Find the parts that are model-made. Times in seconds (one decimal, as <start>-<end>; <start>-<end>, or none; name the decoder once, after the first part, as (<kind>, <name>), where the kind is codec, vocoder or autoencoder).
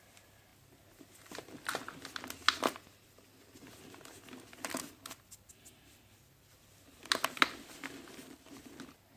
none